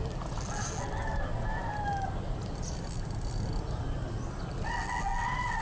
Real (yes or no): yes